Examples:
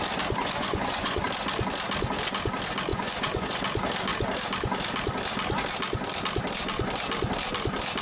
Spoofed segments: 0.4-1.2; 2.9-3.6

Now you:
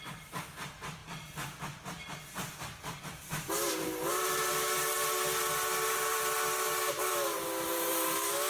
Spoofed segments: 0.0-1.0; 3.0-8.5

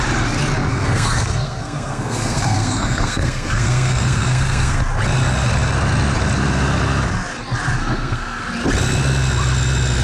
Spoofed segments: 0.7-4.8; 7.8-8.4